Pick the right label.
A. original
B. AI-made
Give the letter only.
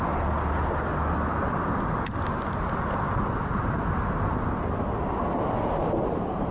A